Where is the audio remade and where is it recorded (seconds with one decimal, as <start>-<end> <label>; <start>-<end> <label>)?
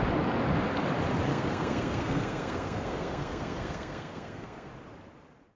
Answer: 0.0-1.3 recorded; 1.3-4.7 remade; 4.7-5.6 recorded